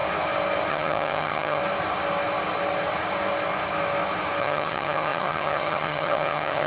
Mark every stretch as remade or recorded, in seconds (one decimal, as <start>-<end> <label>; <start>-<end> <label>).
0.0-0.7 recorded; 0.7-1.6 remade; 1.6-4.4 recorded; 4.4-6.7 remade

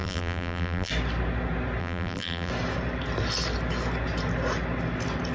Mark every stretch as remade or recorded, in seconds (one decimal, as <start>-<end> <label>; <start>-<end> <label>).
0.0-0.9 remade; 0.9-1.8 recorded; 1.8-2.5 remade; 2.5-5.3 recorded

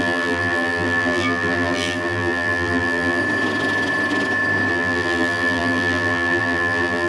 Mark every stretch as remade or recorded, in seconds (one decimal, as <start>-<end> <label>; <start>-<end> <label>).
0.0-3.2 remade; 3.2-4.7 recorded; 4.7-7.1 remade

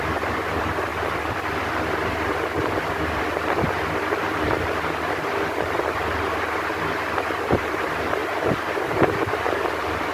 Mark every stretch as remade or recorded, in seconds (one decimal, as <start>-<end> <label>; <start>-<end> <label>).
0.0-8.2 remade; 8.2-8.8 recorded; 8.8-10.1 remade

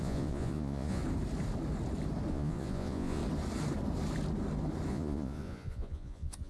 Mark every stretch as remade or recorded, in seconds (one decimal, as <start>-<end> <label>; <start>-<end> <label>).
0.0-1.0 remade; 1.0-2.3 recorded; 2.3-3.2 remade; 3.2-4.9 recorded; 4.9-6.5 remade